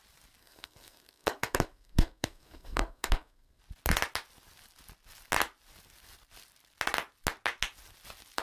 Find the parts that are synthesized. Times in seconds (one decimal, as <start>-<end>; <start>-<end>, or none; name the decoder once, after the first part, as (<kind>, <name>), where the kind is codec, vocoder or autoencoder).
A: 0.4-3.6 (codec, SNAC)